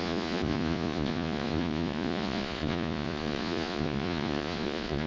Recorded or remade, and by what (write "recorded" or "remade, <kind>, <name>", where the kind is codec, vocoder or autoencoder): remade, vocoder, Vocos